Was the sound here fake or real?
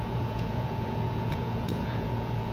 fake